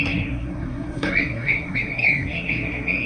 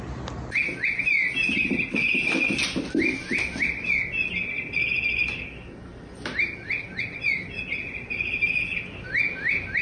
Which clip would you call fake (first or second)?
first